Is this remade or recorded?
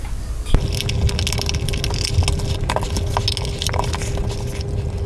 recorded